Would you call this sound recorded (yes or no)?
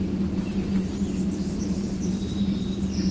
yes